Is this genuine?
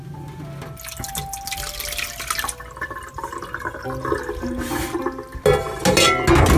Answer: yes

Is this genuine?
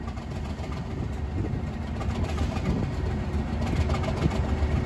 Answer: yes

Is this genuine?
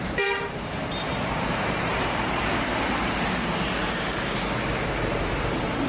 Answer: no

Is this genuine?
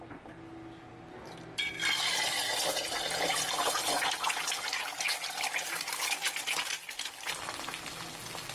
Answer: yes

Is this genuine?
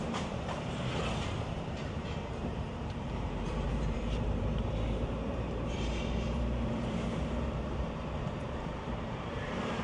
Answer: no